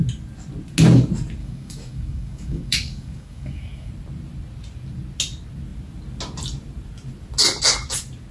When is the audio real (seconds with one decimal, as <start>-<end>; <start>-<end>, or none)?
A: 0.0-1.4; 3.9-8.3